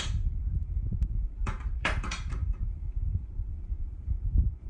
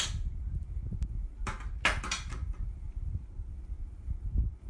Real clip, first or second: second